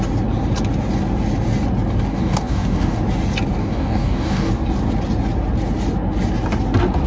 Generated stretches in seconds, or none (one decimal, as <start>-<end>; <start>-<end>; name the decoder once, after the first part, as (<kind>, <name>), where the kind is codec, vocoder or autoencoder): 2.1-3.0 (codec, DAC); 3.6-4.5